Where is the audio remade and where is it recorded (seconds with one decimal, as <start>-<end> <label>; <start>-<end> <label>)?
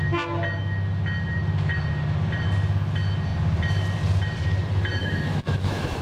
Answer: 0.0-5.0 recorded; 5.0-6.0 remade